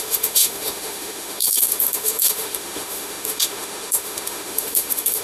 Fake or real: fake